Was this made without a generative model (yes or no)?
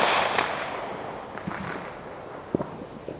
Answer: yes